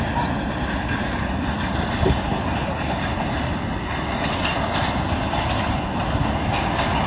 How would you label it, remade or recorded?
recorded